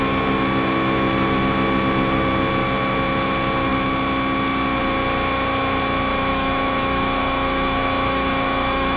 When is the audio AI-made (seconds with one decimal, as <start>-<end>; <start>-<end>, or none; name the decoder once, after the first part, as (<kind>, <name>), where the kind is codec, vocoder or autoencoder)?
6.3-9.0 (autoencoder, DAC-VAE)